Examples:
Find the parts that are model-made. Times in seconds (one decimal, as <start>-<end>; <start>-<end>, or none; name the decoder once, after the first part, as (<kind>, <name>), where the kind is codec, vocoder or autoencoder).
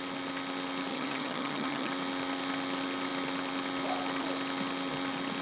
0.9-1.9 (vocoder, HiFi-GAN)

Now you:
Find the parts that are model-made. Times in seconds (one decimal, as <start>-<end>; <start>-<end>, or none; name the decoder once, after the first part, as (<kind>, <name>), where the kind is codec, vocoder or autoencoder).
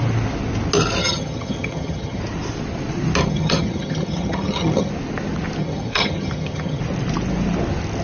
1.0-2.2 (vocoder, HiFi-GAN); 3.2-4.9; 5.6-6.8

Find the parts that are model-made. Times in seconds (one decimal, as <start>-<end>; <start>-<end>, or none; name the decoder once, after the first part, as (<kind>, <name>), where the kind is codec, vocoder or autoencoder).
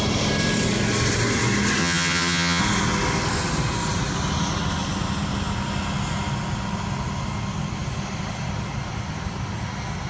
1.8-2.6 (vocoder, HiFi-GAN)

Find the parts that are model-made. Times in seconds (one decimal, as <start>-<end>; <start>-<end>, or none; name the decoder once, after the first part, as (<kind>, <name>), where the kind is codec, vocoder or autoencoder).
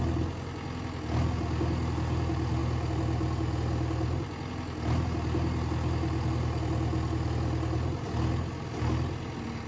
none